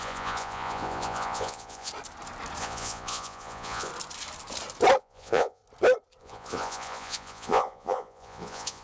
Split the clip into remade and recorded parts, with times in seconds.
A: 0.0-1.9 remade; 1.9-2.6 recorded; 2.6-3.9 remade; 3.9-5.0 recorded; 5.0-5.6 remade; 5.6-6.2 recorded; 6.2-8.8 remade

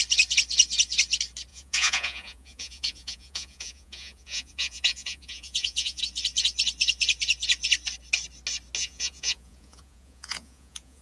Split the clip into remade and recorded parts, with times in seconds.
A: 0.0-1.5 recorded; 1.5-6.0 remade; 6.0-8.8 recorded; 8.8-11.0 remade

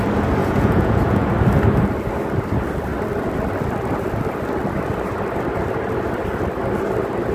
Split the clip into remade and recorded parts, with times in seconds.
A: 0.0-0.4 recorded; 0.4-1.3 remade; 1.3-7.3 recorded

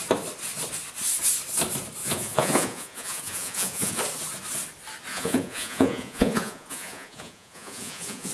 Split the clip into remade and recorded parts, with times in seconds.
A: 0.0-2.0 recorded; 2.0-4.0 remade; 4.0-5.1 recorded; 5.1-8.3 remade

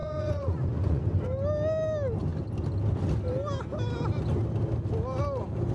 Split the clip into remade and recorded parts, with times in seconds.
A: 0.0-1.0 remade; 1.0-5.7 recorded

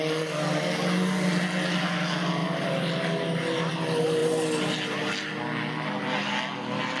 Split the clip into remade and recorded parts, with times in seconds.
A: 0.0-7.0 recorded

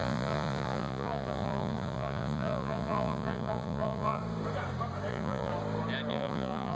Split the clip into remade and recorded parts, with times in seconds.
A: 0.0-4.2 remade; 4.2-5.1 recorded; 5.1-5.5 remade; 5.5-6.1 recorded; 6.1-6.8 remade